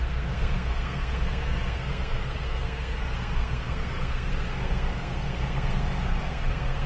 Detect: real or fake fake